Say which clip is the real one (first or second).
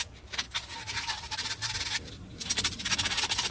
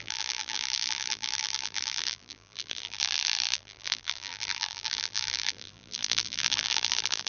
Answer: first